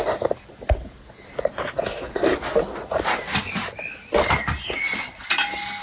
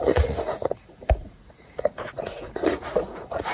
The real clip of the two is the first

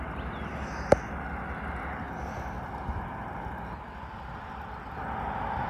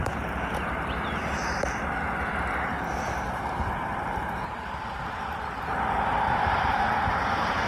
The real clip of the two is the first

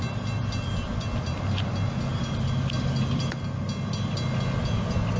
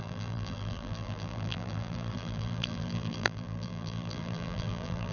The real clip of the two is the first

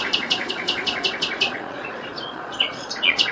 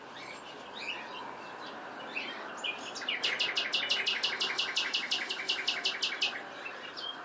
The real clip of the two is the second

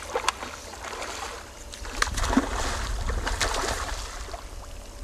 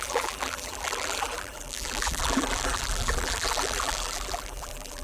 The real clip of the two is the first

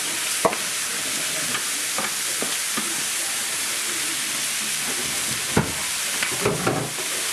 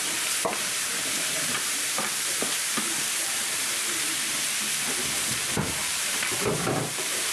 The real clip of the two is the first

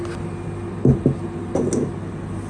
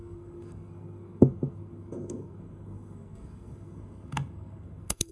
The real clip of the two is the first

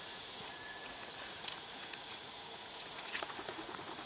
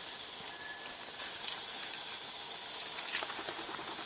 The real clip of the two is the second